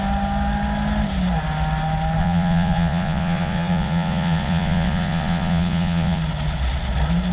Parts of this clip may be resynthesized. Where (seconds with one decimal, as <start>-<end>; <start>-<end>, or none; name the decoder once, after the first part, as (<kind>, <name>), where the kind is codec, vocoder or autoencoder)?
2.2-6.2 (vocoder, Vocos)